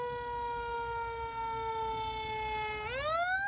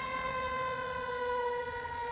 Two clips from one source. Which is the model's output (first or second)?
second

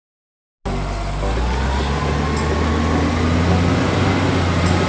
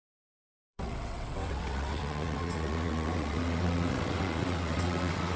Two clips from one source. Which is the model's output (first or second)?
second